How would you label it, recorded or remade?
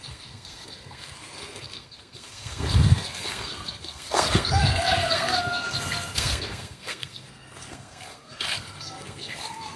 remade